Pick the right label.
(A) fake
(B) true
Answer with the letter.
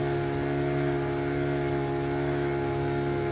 B